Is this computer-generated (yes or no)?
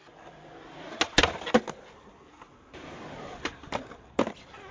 no